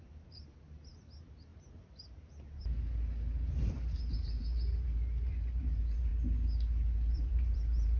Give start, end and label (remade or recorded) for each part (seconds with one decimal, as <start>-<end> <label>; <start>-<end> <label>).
0.0-1.5 remade; 1.5-3.6 recorded; 3.6-6.1 remade; 6.1-7.1 recorded; 7.1-8.0 remade